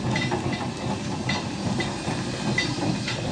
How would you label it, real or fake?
real